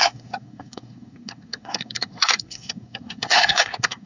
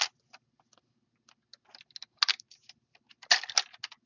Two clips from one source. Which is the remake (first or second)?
first